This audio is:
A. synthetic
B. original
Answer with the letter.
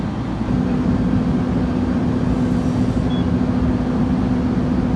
B